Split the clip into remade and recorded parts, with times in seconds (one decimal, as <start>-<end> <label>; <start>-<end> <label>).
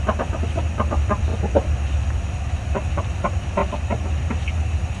0.0-3.6 recorded; 3.6-4.3 remade; 4.3-5.0 recorded